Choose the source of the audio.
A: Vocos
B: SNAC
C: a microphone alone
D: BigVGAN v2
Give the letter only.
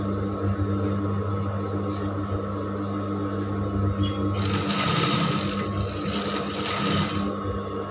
C